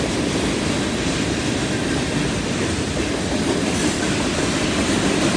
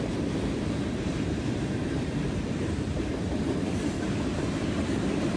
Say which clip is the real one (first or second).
first